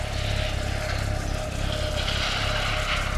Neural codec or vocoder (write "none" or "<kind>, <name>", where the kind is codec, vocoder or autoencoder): none